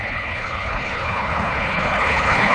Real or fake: fake